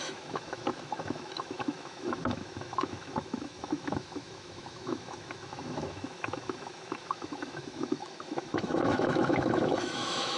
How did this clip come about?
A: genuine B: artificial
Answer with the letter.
B